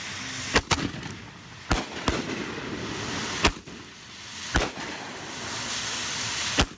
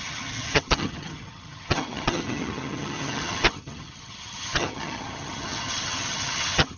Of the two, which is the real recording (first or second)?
first